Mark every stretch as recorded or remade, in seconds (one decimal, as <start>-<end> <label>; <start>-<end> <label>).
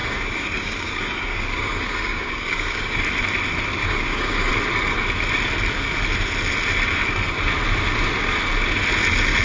0.0-3.0 remade; 3.0-3.8 recorded; 3.8-4.5 remade; 4.5-9.4 recorded